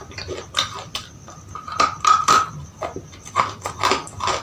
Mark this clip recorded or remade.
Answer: recorded